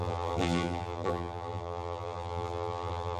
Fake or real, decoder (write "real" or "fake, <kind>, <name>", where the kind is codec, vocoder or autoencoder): fake, vocoder, BigVGAN v2